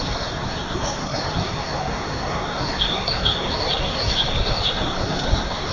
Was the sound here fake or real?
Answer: fake